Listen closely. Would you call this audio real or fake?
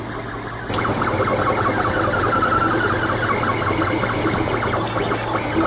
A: real